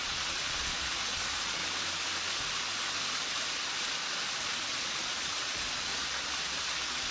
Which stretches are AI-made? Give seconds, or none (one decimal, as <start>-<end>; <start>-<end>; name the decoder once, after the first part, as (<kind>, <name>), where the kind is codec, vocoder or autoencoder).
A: 0.0-1.6 (vocoder, Vocos); 4.8-5.9